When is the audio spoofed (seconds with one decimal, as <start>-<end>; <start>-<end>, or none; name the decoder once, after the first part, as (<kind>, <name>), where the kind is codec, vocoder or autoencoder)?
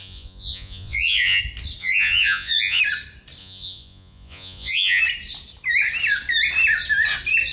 0.0-1.4 (vocoder, Vocos); 1.8-2.8; 3.4-5.0